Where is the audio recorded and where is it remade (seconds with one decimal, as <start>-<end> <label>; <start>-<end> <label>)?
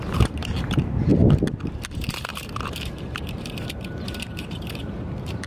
0.0-1.1 remade; 1.1-1.9 recorded; 1.9-5.5 remade